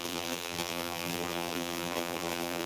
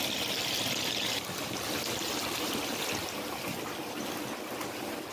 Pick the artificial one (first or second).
first